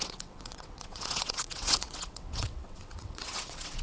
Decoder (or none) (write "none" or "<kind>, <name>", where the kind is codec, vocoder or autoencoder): vocoder, WaveNeXt